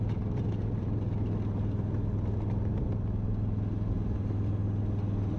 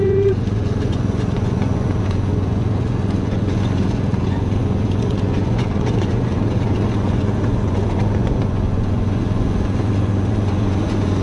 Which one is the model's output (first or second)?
second